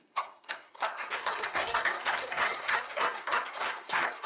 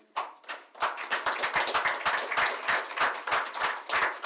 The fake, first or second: first